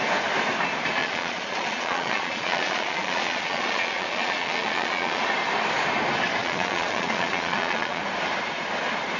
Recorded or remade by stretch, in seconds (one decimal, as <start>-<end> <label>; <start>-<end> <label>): 0.0-1.0 recorded; 1.0-5.2 remade; 5.2-6.4 recorded; 6.4-8.0 remade; 8.0-9.2 recorded